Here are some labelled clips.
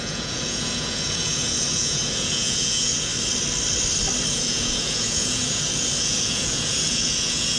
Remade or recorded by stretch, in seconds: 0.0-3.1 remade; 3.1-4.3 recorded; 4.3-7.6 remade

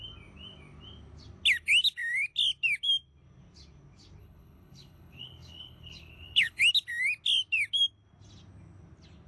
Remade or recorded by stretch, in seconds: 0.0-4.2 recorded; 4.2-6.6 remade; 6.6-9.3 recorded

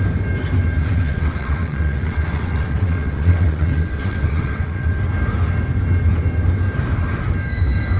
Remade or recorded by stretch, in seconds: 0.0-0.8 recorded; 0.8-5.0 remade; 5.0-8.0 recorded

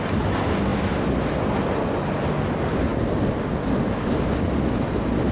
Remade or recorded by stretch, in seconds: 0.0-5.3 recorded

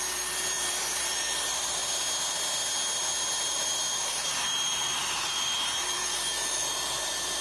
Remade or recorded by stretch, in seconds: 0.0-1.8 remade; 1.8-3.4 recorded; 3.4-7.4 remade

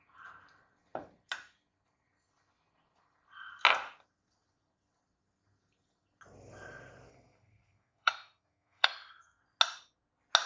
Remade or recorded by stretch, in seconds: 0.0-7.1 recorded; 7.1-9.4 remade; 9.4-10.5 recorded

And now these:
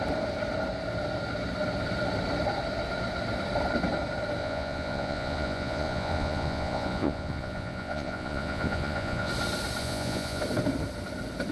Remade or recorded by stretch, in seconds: 0.0-4.4 recorded; 4.4-9.3 remade; 9.3-9.8 recorded; 9.8-10.4 remade; 10.4-11.5 recorded

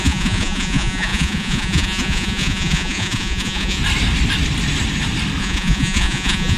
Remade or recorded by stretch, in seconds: 0.0-3.8 remade; 3.8-5.4 recorded; 5.4-6.6 remade